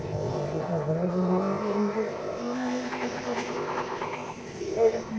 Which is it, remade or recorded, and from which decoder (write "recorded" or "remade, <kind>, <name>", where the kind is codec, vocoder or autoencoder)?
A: remade, codec, ZipCodec